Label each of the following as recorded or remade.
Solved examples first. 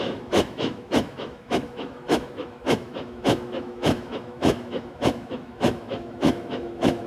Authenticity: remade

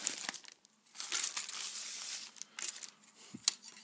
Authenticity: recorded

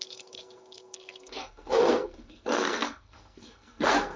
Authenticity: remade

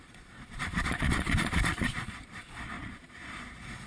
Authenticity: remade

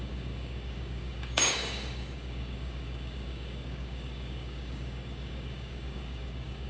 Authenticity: remade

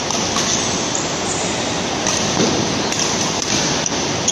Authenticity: recorded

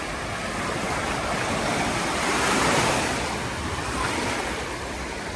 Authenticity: recorded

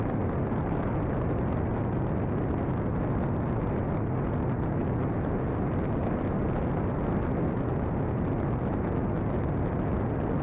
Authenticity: recorded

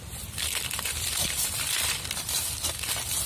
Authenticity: remade